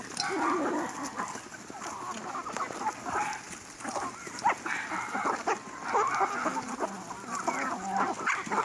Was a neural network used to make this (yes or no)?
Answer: no